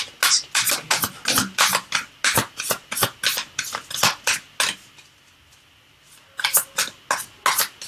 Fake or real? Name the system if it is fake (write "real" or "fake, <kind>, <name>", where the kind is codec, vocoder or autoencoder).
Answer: real